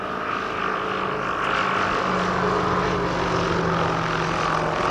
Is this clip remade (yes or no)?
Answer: no